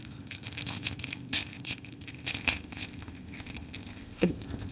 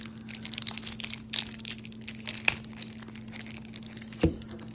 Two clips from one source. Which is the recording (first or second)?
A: second